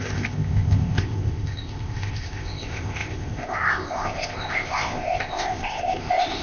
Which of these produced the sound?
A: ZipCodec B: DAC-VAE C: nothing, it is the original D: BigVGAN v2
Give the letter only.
A